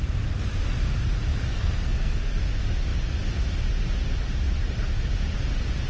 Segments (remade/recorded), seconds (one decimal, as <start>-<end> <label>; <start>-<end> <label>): 0.0-1.3 recorded; 1.3-2.4 remade; 2.4-5.9 recorded

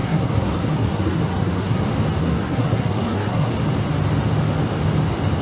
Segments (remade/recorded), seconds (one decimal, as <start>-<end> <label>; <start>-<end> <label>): 0.0-1.8 remade; 1.8-2.2 recorded; 2.2-3.5 remade; 3.5-5.4 recorded

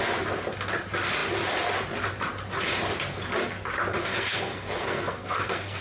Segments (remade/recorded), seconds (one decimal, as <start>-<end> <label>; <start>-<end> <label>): 0.0-4.1 recorded; 4.1-5.8 remade

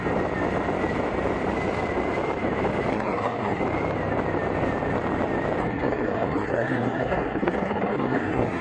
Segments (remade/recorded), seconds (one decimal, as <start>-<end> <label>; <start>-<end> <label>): 0.0-2.9 recorded; 2.9-3.6 remade; 3.6-5.6 recorded; 5.6-8.6 remade

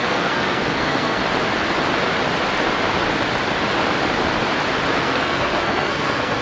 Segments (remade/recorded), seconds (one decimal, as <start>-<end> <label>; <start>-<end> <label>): 0.0-1.2 remade; 1.2-5.0 recorded; 5.0-6.4 remade